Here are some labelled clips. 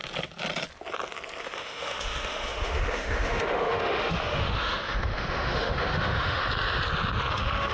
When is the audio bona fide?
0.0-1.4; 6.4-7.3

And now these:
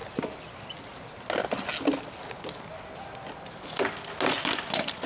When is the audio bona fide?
0.0-5.1

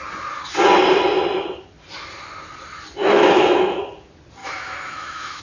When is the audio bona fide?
0.0-3.0; 3.8-4.4

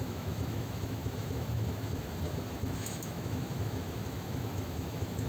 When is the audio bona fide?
none

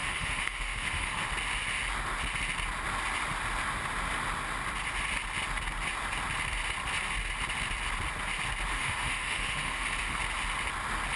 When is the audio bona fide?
1.3-8.7; 10.2-11.2

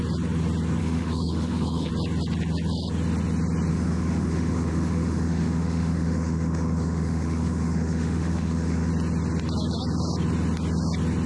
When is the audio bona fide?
0.0-0.8; 1.9-3.7; 8.9-11.3